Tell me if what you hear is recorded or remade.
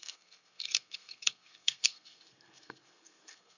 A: remade